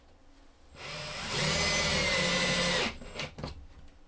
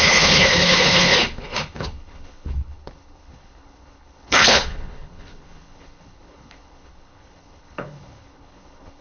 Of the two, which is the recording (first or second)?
first